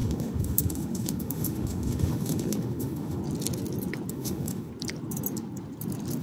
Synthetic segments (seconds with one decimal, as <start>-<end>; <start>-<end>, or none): 0.0-3.2; 4.1-4.7